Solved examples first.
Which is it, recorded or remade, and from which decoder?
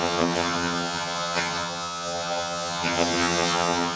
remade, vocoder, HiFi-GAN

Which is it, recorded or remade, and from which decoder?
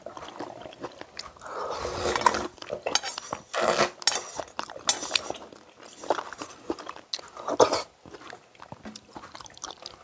recorded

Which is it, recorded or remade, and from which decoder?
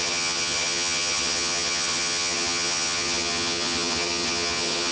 remade, vocoder, HiFi-GAN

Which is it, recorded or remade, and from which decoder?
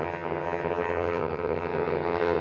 remade, vocoder, HiFi-GAN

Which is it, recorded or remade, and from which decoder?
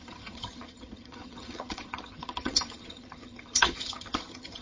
remade, vocoder, HiFi-GAN